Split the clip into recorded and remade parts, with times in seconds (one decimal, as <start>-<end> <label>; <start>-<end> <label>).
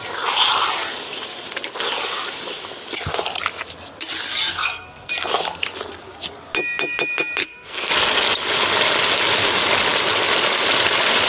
0.0-4.5 recorded; 4.5-5.1 remade; 5.1-7.4 recorded; 7.4-7.9 remade; 7.9-11.3 recorded